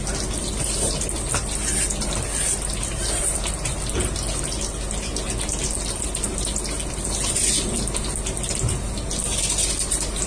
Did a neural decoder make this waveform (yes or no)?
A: no